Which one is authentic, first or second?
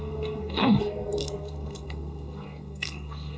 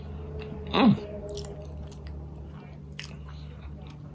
second